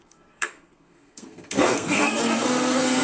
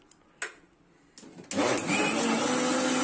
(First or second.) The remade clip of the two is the first